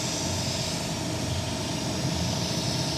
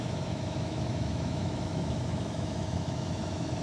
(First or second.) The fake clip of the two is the second